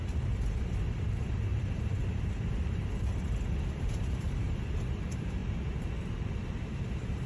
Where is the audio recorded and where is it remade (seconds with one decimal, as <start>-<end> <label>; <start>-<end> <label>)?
0.0-5.4 remade; 5.4-6.7 recorded; 6.7-7.3 remade